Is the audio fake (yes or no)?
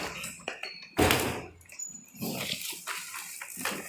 no